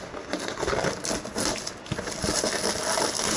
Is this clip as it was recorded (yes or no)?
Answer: yes